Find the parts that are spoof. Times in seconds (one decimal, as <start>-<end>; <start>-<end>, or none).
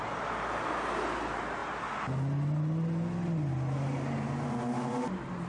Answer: none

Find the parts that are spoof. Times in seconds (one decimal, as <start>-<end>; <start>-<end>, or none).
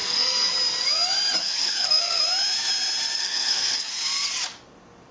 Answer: 0.0-0.5; 1.4-2.2; 3.2-3.9